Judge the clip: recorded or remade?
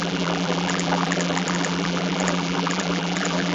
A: remade